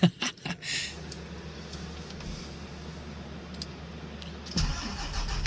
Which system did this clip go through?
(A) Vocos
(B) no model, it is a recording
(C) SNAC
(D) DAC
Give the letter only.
B